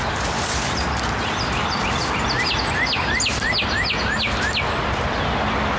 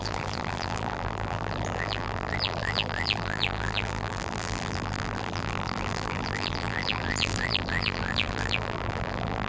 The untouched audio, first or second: first